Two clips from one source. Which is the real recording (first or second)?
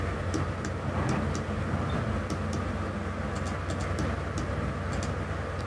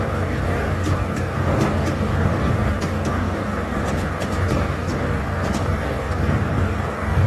first